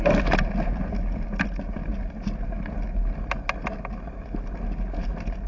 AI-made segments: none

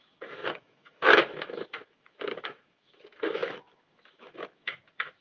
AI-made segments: 0.0-5.2 (autoencoder, DAC-VAE)